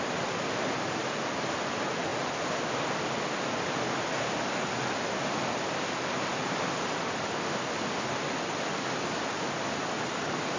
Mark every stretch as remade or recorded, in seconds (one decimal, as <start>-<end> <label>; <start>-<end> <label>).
0.0-10.6 recorded